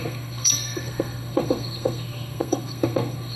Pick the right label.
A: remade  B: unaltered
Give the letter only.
A